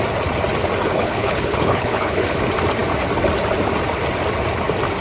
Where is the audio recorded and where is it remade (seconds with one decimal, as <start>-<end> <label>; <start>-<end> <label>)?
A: 0.0-0.9 recorded; 0.9-2.4 remade; 2.4-5.0 recorded